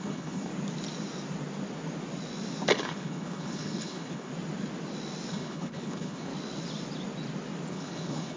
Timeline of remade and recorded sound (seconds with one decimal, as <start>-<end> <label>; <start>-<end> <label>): 0.0-0.5 remade; 0.5-2.8 recorded; 2.8-4.3 remade; 4.3-5.3 recorded; 5.3-6.3 remade; 6.3-7.7 recorded; 7.7-8.4 remade

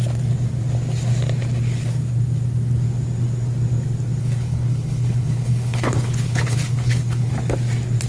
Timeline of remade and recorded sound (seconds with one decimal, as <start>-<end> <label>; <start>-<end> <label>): 0.0-4.2 recorded; 4.2-7.3 remade; 7.3-8.1 recorded

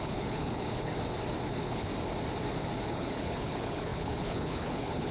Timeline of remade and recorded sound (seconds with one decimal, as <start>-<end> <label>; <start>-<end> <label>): 0.0-0.9 remade; 0.9-1.5 recorded; 1.5-1.9 remade; 1.9-2.9 recorded; 2.9-5.1 remade

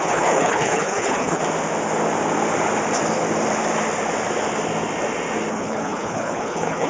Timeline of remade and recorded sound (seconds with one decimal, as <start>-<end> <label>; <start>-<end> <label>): 0.0-1.4 remade; 1.4-5.5 recorded; 5.5-6.9 remade

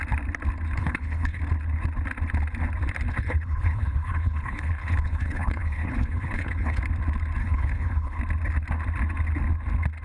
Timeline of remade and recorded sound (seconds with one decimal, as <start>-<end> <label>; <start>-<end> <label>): 0.0-0.8 recorded; 0.8-1.4 remade; 1.4-3.1 recorded; 3.1-6.8 remade; 6.8-7.4 recorded; 7.4-8.2 remade; 8.2-10.0 recorded